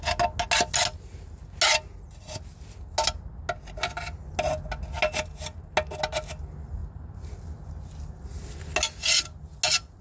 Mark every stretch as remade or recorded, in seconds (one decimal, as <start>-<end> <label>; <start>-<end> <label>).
0.0-10.0 recorded